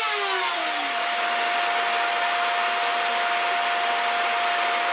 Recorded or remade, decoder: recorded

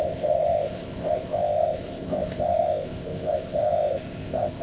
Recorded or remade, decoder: remade, codec, ZipCodec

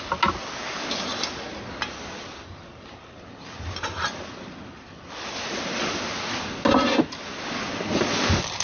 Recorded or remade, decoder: recorded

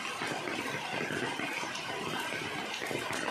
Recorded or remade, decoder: recorded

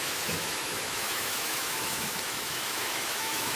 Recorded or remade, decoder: remade, autoencoder, DAC-VAE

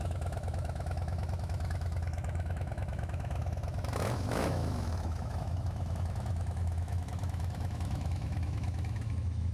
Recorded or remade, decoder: remade, autoencoder, DAC-VAE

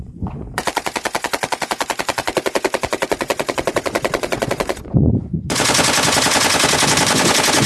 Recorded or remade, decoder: remade, vocoder, Vocos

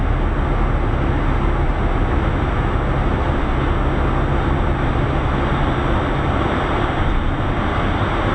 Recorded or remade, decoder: recorded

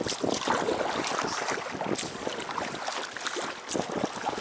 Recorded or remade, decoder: recorded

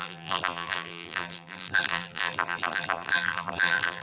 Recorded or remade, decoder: remade, vocoder, BigVGAN v2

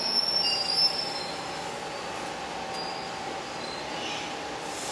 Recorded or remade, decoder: recorded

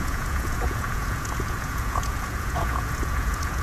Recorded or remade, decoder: remade, vocoder, Vocos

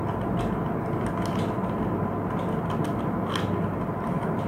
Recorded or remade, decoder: recorded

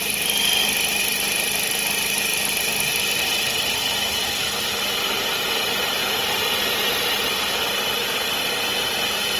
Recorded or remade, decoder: recorded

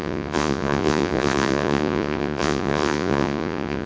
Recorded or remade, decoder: remade, vocoder, Vocos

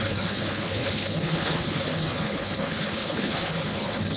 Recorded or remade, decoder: remade, codec, HILCodec